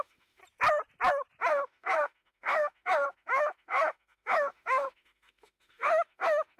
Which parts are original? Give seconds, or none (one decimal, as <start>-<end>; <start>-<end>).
0.4-1.4